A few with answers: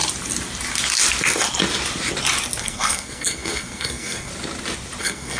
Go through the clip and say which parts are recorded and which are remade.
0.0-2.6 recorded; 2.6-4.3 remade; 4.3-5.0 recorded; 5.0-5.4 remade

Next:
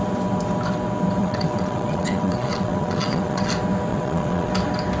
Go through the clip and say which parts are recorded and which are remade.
0.0-1.2 recorded; 1.2-3.5 remade; 3.5-3.9 recorded; 3.9-4.5 remade; 4.5-5.0 recorded

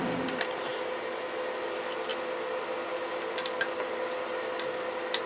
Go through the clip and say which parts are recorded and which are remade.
0.0-5.3 recorded

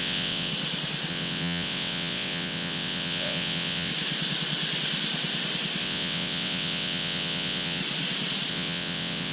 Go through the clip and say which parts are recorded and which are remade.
0.0-0.5 remade; 0.5-1.1 recorded; 1.1-3.9 remade; 3.9-5.8 recorded; 5.8-7.8 remade; 7.8-8.5 recorded; 8.5-9.3 remade

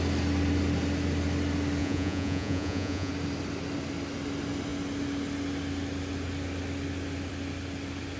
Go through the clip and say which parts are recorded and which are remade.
0.0-1.8 recorded; 1.8-3.1 remade; 3.1-8.2 recorded